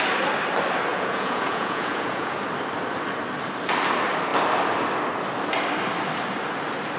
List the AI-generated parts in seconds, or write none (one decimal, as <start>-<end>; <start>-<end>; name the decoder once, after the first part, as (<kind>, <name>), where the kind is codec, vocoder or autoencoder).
0.9-2.4 (vocoder, Vocos)